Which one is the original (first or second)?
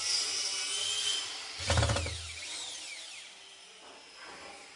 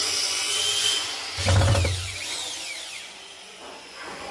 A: first